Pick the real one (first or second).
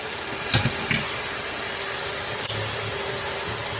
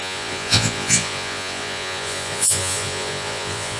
first